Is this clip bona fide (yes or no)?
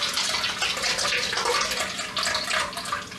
yes